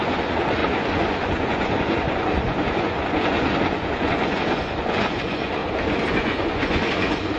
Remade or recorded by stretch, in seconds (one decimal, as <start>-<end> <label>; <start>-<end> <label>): 0.0-5.6 remade; 5.6-6.1 recorded; 6.1-7.4 remade